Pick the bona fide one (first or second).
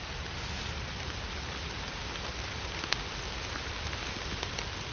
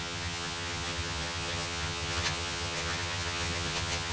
first